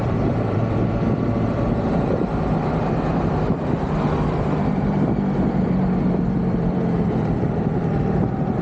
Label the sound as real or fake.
fake